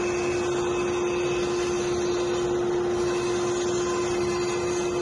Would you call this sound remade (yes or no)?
no